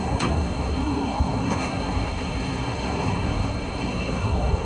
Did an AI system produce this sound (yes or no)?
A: yes